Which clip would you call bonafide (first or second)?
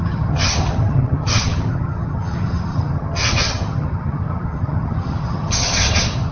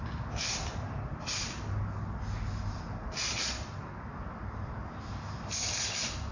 second